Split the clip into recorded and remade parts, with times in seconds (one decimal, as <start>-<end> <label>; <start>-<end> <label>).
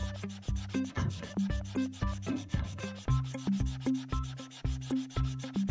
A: 0.0-0.9 recorded; 0.9-1.3 remade; 1.3-2.3 recorded; 2.3-2.8 remade; 2.8-5.7 recorded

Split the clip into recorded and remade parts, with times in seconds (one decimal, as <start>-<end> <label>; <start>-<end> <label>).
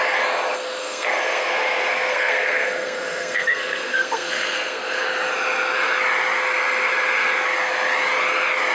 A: 0.0-0.8 recorded; 0.8-1.5 remade; 1.5-1.9 recorded; 1.9-5.0 remade; 5.0-8.7 recorded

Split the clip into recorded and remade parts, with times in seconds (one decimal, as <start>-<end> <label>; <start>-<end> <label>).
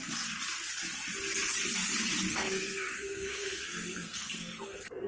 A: 0.0-2.3 recorded; 2.3-5.1 remade